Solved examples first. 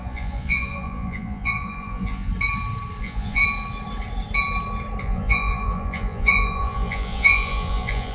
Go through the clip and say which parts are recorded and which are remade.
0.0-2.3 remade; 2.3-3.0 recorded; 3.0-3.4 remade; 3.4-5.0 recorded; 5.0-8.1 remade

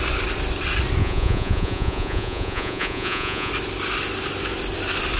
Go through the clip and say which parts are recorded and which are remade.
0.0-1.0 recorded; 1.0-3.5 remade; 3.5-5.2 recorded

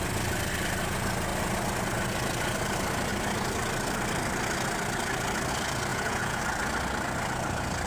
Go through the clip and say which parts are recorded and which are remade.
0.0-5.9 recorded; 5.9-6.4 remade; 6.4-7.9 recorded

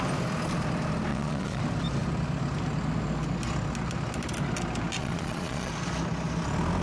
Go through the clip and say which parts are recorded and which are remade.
0.0-1.1 recorded; 1.1-1.6 remade; 1.6-5.0 recorded; 5.0-5.7 remade; 5.7-6.8 recorded

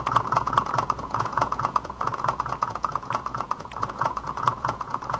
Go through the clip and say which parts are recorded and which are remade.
0.0-5.2 remade

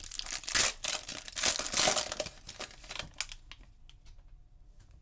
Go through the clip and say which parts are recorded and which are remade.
0.0-5.0 recorded